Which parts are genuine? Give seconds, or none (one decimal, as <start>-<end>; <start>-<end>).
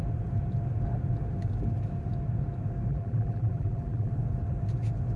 0.0-2.9; 4.1-5.2